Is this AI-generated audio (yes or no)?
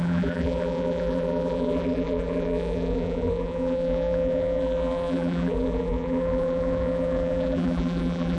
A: yes